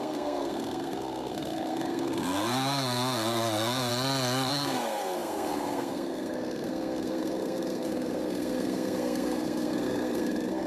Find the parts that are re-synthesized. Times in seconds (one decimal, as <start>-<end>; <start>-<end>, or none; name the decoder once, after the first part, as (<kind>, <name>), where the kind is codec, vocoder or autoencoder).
0.0-3.9 (codec, SNAC); 4.5-10.7